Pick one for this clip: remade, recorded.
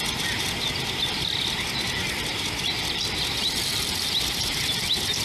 remade